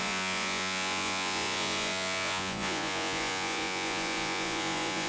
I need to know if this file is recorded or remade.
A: remade